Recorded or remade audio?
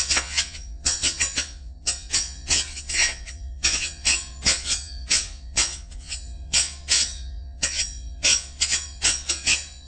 remade